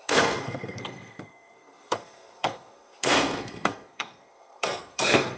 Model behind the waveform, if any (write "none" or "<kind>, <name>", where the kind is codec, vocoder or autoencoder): codec, SNAC